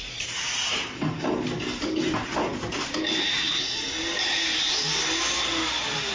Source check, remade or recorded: recorded